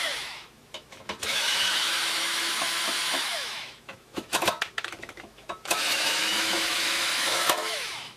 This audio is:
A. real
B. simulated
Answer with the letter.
B